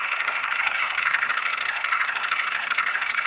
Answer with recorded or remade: remade